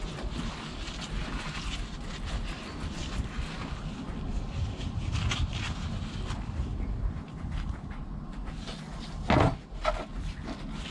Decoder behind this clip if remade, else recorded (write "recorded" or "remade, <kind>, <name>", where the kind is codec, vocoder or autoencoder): recorded